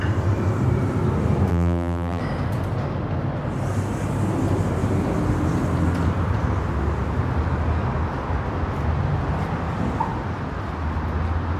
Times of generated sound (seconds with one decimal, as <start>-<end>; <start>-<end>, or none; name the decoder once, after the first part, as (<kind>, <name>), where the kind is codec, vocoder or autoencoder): 1.5-2.2 (vocoder, BigVGAN v2)

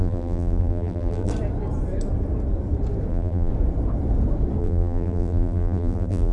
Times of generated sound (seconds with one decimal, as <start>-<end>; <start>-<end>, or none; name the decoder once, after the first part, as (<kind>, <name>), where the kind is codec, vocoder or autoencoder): 0.0-1.3 (vocoder, BigVGAN v2); 3.1-3.5; 4.6-6.3